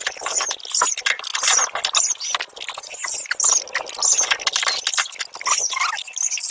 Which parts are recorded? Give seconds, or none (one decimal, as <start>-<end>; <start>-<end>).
0.0-6.5

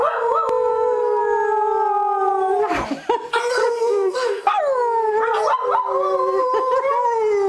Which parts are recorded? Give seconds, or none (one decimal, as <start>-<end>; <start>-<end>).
0.0-0.7; 1.2-3.6; 4.6-7.5